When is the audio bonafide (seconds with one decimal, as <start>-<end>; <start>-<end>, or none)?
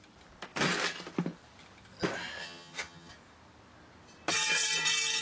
0.0-2.4; 3.1-5.2